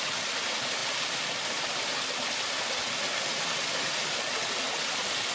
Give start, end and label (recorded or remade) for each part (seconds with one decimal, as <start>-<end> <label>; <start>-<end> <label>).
0.0-5.3 recorded